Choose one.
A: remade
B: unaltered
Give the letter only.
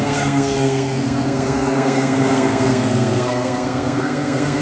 A